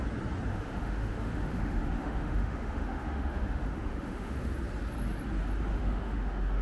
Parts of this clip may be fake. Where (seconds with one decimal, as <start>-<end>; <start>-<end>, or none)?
0.5-4.5; 5.7-6.6